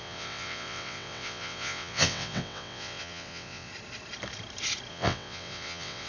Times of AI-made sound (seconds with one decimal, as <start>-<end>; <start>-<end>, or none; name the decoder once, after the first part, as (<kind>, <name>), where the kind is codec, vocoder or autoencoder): 0.0-3.7 (vocoder, WaveNeXt); 4.9-6.1